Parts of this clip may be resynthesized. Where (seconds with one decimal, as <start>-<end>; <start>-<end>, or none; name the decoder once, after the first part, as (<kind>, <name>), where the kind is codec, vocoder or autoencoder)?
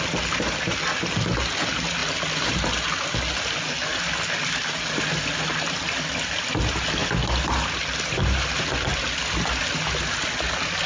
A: none